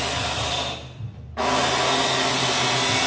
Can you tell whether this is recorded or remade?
recorded